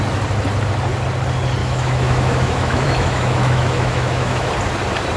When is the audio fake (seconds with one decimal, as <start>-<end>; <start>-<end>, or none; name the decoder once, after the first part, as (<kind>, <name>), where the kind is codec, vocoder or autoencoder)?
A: 1.6-4.5 (autoencoder, DAC-VAE)

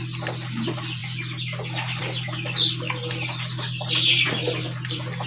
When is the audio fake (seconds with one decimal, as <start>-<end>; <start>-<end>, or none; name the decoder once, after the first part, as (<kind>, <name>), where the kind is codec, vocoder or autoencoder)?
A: none

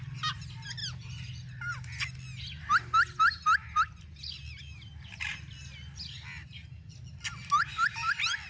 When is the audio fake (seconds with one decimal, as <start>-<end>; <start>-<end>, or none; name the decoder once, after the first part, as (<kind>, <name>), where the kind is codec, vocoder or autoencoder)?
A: none

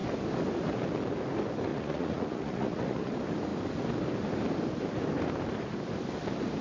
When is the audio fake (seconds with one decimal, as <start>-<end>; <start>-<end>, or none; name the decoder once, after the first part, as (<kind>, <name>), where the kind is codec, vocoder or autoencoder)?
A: 1.7-3.1 (vocoder, Vocos)

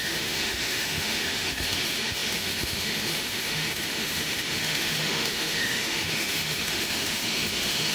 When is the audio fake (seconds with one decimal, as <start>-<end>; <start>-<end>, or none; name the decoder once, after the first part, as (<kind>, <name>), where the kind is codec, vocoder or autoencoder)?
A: 0.0-7.9 (autoencoder, DAC-VAE)

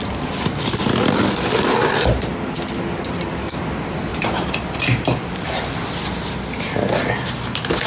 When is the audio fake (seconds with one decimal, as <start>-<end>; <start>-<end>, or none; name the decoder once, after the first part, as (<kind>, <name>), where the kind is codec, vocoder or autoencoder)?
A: 4.1-5.6 (vocoder, BigVGAN v2)

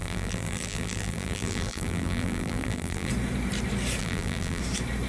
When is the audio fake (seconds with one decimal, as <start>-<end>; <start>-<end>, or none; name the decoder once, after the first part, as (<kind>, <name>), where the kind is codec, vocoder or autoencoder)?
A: 0.0-3.1 (vocoder, BigVGAN v2); 4.0-4.6

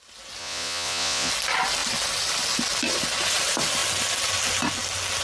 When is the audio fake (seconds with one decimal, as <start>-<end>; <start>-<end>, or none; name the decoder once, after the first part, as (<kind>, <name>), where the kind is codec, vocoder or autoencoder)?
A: 0.4-1.3 (vocoder, Vocos)